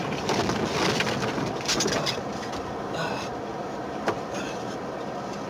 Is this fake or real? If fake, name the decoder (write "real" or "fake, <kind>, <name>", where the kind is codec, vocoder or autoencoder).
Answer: real